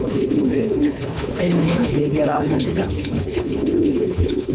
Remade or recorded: remade